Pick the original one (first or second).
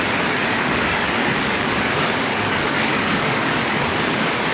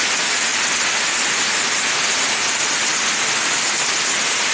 second